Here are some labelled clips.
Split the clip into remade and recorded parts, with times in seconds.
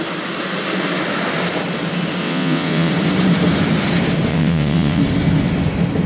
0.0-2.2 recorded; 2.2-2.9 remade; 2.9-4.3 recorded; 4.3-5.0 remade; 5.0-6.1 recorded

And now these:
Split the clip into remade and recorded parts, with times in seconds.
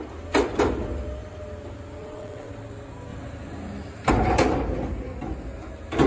0.0-2.0 recorded; 2.0-2.5 remade; 2.5-6.1 recorded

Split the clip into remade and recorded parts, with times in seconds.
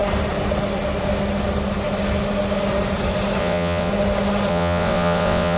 0.0-3.4 recorded; 3.4-3.9 remade; 3.9-4.5 recorded; 4.5-5.6 remade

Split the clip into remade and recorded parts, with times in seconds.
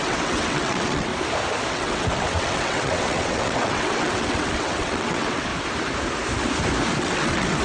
0.0-1.1 remade; 1.1-1.7 recorded; 1.7-5.5 remade; 5.5-7.0 recorded; 7.0-7.6 remade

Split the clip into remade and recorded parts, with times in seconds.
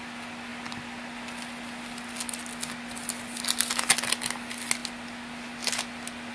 0.0-6.3 recorded